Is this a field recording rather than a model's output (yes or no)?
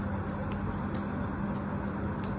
yes